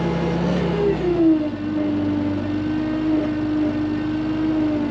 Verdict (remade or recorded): recorded